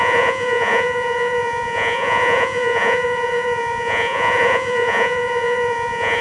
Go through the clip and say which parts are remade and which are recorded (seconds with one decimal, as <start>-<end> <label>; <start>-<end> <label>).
0.0-6.2 remade